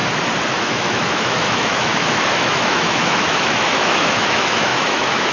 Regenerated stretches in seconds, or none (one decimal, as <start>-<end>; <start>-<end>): 0.6-5.3